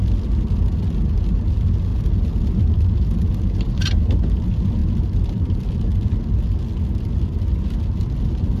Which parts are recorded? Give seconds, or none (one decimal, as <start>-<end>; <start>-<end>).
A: 0.0-8.6